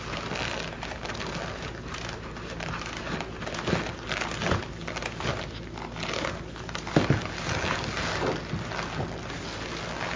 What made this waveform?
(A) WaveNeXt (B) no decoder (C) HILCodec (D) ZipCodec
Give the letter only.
B